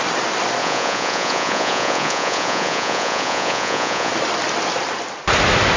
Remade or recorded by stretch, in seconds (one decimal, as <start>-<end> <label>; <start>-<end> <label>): 0.0-0.6 recorded; 0.6-4.1 remade; 4.1-5.8 recorded